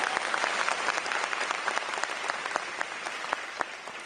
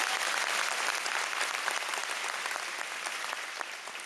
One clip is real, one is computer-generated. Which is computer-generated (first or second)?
first